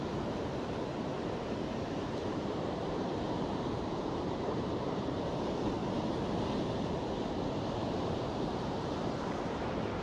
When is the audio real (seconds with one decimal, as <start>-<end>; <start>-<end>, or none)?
5.8-7.7